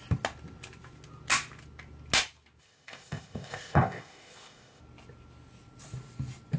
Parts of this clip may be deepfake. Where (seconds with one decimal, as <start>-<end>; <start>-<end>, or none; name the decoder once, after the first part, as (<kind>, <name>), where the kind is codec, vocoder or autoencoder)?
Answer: 2.6-4.8 (codec, ZipCodec)

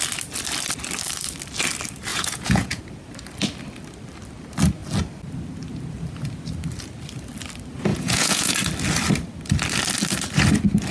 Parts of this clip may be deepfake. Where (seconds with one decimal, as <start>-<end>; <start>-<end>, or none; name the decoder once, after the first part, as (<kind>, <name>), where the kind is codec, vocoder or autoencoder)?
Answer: 2.1-2.8 (vocoder, Vocos); 7.9-8.6